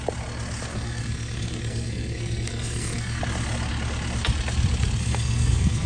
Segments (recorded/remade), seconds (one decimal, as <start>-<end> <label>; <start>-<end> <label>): 0.0-0.7 recorded; 0.7-3.2 remade; 3.2-5.0 recorded; 5.0-5.9 remade